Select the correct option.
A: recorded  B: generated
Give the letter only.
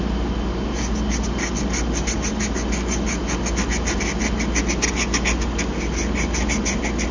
A